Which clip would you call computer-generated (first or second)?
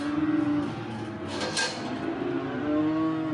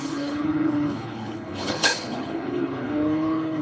second